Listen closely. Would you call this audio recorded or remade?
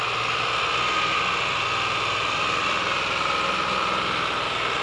recorded